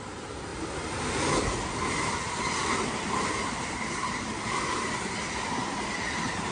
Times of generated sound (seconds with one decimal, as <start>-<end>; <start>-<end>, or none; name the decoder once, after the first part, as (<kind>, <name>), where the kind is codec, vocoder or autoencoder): none